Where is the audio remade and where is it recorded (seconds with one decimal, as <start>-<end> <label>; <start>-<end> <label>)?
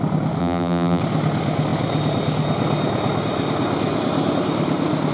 0.0-0.4 recorded; 0.4-1.0 remade; 1.0-5.1 recorded